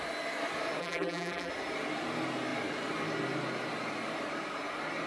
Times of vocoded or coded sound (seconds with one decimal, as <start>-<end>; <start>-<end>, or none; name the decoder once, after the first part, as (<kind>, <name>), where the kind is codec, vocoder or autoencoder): 0.8-1.5 (vocoder, BigVGAN v2)